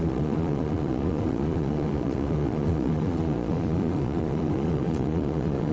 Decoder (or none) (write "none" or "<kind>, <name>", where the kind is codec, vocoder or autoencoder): vocoder, Vocos